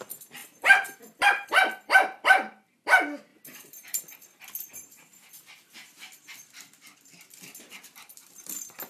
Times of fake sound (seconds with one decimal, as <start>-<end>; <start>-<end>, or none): 0.4-2.7; 3.3-8.5